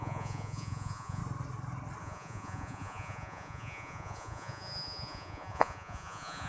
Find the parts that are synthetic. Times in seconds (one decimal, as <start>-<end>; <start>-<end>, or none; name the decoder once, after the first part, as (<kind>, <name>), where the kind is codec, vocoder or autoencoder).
0.0-1.2 (vocoder, Vocos); 2.0-6.5